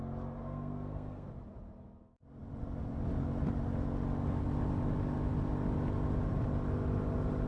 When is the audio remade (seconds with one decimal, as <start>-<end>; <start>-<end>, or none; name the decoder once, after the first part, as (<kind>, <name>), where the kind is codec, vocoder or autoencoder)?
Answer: 0.4-1.3 (codec, SNAC)